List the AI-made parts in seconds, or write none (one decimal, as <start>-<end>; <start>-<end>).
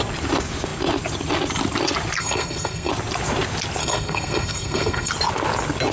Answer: 2.2-2.9; 3.8-5.1